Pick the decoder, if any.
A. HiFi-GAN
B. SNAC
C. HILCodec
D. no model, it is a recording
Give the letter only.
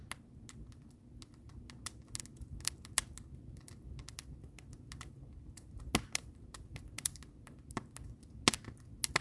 D